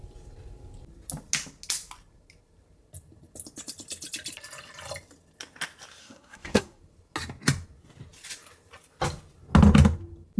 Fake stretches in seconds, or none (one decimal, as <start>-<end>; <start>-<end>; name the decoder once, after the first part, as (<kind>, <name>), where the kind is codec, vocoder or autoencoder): 6.0-6.8 (codec, SNAC)